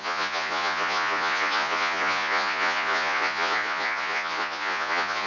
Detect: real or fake fake